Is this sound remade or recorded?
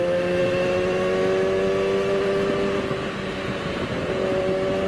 recorded